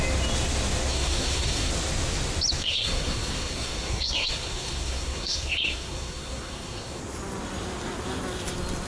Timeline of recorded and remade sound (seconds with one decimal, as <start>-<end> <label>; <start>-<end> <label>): 0.0-0.9 recorded; 0.9-1.7 remade; 1.7-2.6 recorded; 2.6-7.0 remade; 7.0-8.9 recorded